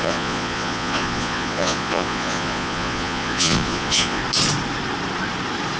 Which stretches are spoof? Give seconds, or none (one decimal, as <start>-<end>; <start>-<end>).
0.0-4.2